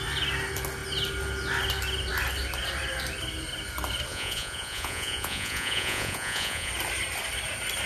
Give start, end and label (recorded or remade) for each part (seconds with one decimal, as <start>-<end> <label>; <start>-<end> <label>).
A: 0.0-4.1 recorded; 4.1-6.7 remade; 6.7-7.9 recorded